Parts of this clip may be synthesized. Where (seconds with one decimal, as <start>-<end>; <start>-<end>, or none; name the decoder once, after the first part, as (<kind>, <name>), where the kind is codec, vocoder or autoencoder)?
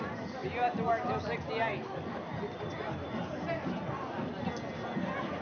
none